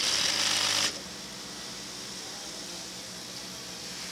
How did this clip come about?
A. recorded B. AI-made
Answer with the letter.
A